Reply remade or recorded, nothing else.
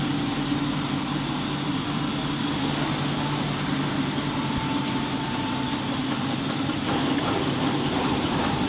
recorded